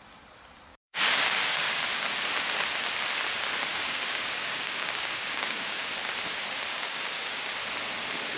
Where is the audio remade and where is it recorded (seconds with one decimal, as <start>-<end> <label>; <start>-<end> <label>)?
0.0-0.7 recorded; 0.7-1.8 remade; 1.8-3.7 recorded; 3.7-5.8 remade; 5.8-6.7 recorded; 6.7-7.5 remade; 7.5-8.4 recorded